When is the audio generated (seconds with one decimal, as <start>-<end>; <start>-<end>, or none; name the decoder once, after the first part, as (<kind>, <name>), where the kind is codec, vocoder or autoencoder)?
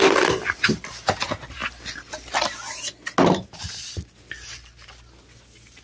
none